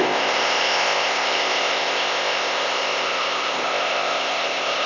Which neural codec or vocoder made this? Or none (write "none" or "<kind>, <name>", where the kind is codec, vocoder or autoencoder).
codec, ZipCodec